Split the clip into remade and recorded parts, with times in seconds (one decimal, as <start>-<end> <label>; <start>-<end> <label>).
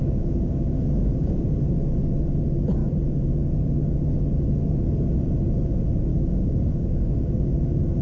0.0-1.4 remade; 1.4-6.1 recorded; 6.1-7.5 remade; 7.5-8.0 recorded